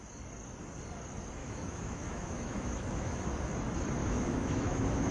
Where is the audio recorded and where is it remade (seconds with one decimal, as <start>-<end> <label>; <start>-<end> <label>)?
0.0-1.4 recorded; 1.4-3.3 remade; 3.3-4.0 recorded; 4.0-5.1 remade